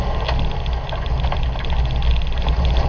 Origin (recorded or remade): recorded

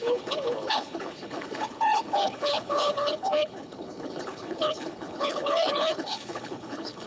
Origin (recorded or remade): remade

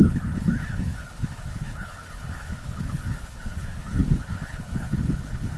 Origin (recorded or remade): remade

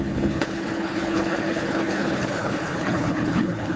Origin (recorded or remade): remade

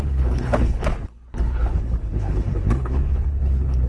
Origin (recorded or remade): remade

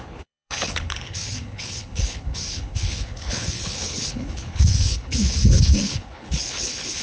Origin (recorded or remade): remade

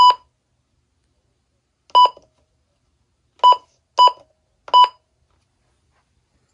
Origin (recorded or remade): recorded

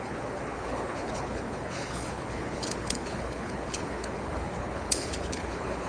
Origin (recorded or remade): remade